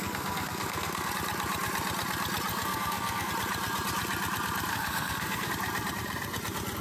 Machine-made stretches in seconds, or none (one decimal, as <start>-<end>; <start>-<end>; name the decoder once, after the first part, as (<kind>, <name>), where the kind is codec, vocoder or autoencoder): 0.0-1.1 (codec, SNAC); 2.5-3.3; 4.7-5.5